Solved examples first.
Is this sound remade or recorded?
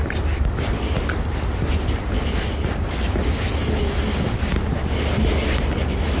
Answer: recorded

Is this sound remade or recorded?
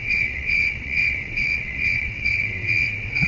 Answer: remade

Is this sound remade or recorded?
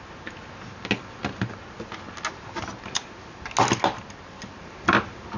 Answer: recorded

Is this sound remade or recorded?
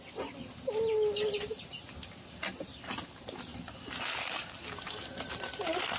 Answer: recorded